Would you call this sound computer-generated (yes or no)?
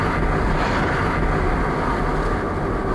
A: no